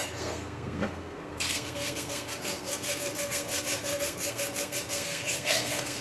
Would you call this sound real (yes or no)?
no